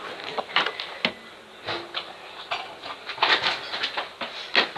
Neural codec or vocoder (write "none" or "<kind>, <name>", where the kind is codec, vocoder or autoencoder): none